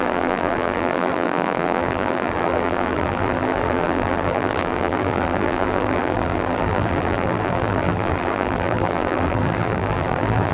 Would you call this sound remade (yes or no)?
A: yes